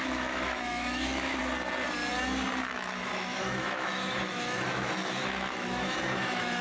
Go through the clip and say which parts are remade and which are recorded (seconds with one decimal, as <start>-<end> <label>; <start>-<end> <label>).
0.0-1.4 remade; 1.4-2.7 recorded; 2.7-6.6 remade